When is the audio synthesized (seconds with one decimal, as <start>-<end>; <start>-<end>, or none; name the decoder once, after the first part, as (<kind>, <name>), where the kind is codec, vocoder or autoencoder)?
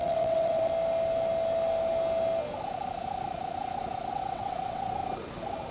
0.0-0.7 (vocoder, WaveNeXt); 4.1-5.0